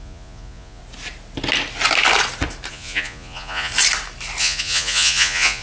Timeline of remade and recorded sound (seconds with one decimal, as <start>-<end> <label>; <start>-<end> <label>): 0.0-0.8 remade; 0.8-2.7 recorded; 2.7-3.7 remade; 3.7-4.4 recorded; 4.4-5.6 remade